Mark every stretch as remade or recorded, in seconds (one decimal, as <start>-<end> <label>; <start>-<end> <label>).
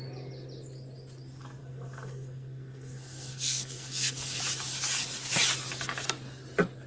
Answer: 0.0-1.6 recorded; 1.6-4.4 remade; 4.4-6.9 recorded